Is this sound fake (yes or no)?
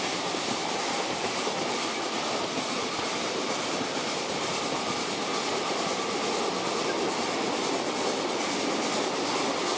no